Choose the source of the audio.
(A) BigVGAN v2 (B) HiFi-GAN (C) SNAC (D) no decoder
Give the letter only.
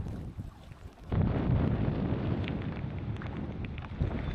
D